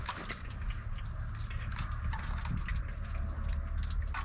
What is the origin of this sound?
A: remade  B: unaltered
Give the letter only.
B